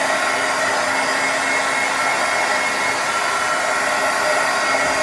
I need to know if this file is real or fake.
real